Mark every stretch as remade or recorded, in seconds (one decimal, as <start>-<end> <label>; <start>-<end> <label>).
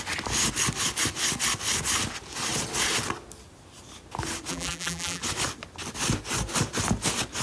0.0-4.5 recorded; 4.5-5.2 remade; 5.2-7.4 recorded